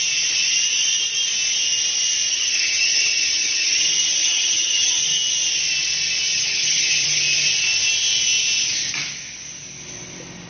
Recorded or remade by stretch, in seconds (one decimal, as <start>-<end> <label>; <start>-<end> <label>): 0.0-2.3 recorded; 2.3-3.8 remade; 3.8-4.2 recorded; 4.2-5.0 remade; 5.0-6.3 recorded; 6.3-7.2 remade; 7.2-10.5 recorded